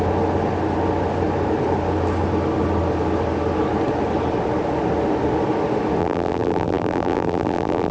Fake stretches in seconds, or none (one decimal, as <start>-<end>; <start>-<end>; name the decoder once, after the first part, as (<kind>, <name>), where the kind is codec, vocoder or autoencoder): 6.0-7.9 (vocoder, BigVGAN v2)

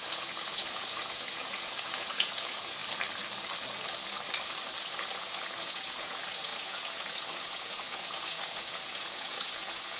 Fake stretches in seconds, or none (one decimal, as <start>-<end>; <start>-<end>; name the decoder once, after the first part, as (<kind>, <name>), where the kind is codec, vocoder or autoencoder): 0.0-2.8 (vocoder, Vocos); 4.8-10.0

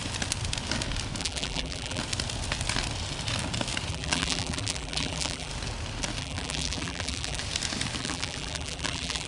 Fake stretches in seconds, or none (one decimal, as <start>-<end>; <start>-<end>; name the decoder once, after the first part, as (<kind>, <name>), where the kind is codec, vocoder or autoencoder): 1.2-2.0 (vocoder, BigVGAN v2); 3.9-5.5; 6.2-7.4; 8.0-9.3

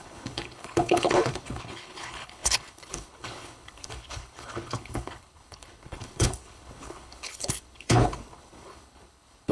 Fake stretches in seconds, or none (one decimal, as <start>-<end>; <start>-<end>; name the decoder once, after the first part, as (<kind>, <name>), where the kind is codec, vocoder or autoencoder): 0.0-9.5 (codec, HILCodec)

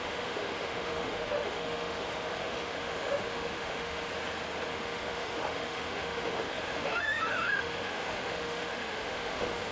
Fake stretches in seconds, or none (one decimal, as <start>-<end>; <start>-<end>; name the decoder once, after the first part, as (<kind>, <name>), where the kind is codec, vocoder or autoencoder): 0.0-4.1 (autoencoder, DAC-VAE); 4.7-9.7